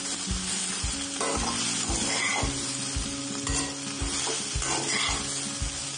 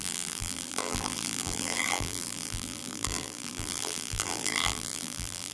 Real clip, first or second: first